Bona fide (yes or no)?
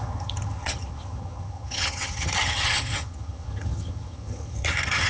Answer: no